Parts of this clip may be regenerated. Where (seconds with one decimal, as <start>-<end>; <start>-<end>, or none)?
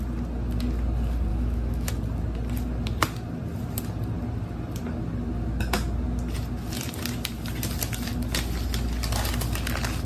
1.3-1.9